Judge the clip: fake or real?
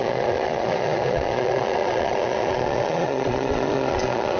fake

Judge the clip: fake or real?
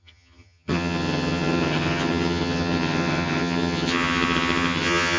fake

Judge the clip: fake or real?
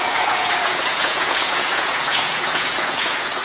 fake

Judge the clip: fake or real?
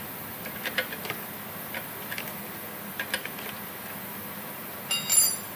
real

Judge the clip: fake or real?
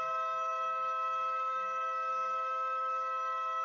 fake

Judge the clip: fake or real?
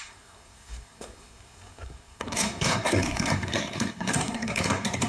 fake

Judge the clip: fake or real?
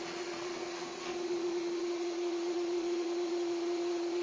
fake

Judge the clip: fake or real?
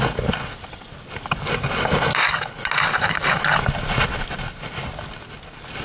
real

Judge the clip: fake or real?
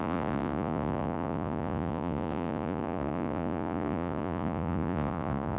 fake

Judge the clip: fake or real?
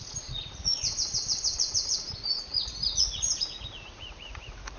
fake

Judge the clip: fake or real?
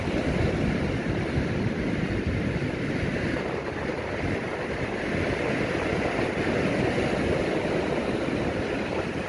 real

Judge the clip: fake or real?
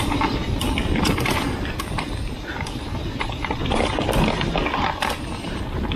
real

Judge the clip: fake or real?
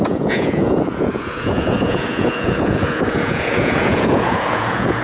fake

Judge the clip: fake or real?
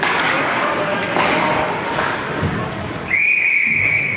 fake